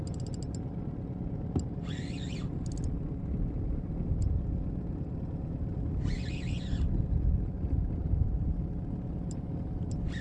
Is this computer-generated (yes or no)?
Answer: no